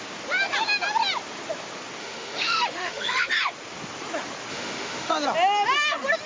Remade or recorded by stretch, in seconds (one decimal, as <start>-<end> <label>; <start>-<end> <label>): 0.0-2.0 recorded; 2.0-3.3 remade; 3.3-4.5 recorded; 4.5-5.1 remade; 5.1-6.3 recorded